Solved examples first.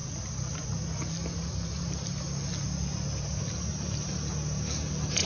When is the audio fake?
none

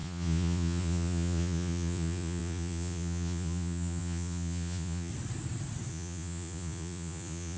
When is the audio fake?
0.0-5.1 (vocoder, Vocos); 5.9-7.6

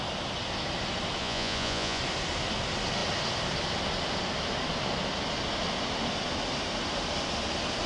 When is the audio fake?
1.2-2.0 (vocoder, Vocos)

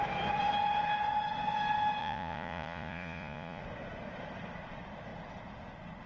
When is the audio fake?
2.0-3.6 (vocoder, Vocos)

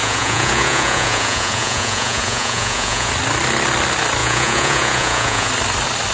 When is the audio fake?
0.0-3.1 (vocoder, Vocos); 4.2-5.5

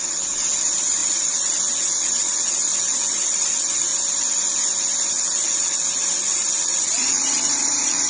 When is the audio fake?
0.0-3.9 (vocoder, Vocos); 5.1-8.1

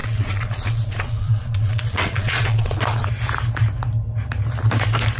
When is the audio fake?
0.0-3.1 (vocoder, Vocos)

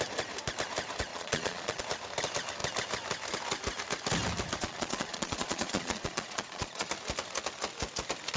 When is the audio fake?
1.1-1.8 (vocoder, Vocos); 4.6-6.9